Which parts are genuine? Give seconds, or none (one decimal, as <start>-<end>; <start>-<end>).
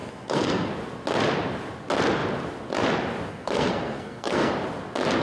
0.7-3.3; 4.5-5.2